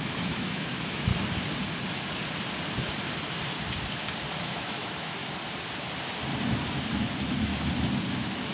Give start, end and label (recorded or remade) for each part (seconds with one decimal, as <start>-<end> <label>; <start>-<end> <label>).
0.0-1.1 remade; 1.1-4.4 recorded; 4.4-5.2 remade; 5.2-7.1 recorded; 7.1-7.5 remade; 7.5-8.1 recorded; 8.1-8.5 remade